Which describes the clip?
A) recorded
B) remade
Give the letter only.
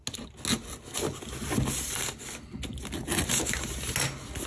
A